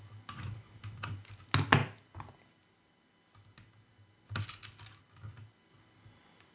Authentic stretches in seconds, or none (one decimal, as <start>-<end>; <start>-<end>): 0.0-6.5